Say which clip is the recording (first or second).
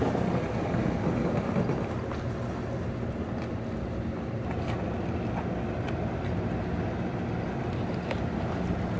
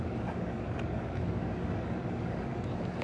first